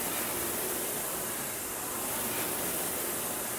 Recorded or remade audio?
recorded